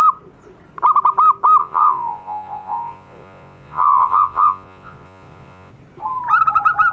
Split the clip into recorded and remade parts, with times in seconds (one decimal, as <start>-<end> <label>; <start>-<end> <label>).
0.0-1.6 recorded; 1.6-5.7 remade; 5.7-6.9 recorded

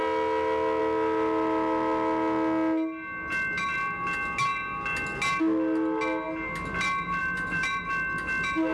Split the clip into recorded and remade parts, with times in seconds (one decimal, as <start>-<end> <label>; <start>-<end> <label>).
0.0-7.2 recorded; 7.2-7.8 remade; 7.8-8.7 recorded

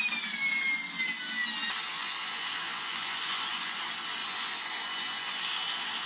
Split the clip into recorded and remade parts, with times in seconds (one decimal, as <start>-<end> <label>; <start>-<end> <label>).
0.0-2.0 recorded; 2.0-3.8 remade; 3.8-4.2 recorded; 4.2-5.4 remade; 5.4-6.1 recorded

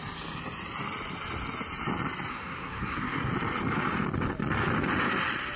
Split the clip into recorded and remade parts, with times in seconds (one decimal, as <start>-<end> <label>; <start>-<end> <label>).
0.0-2.3 recorded; 2.3-3.3 remade; 3.3-5.6 recorded

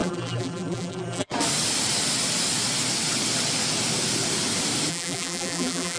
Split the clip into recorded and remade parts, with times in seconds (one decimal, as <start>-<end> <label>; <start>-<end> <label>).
0.0-1.3 remade; 1.3-4.9 recorded; 4.9-6.0 remade

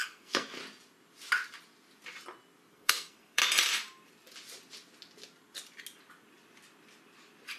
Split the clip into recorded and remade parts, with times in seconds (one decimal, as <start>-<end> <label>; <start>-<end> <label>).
0.0-0.6 remade; 0.6-2.7 recorded; 2.7-3.4 remade; 3.4-7.6 recorded

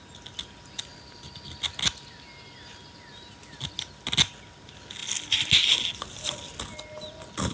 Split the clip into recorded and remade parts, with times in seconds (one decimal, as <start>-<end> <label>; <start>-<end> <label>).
0.0-7.5 recorded